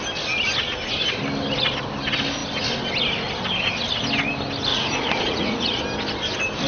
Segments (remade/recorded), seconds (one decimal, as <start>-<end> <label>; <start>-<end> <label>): 0.0-4.7 recorded; 4.7-5.8 remade; 5.8-6.7 recorded